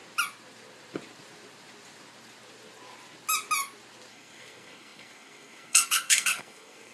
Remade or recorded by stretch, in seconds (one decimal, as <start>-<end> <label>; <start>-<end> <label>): 0.0-4.1 recorded; 4.1-6.9 remade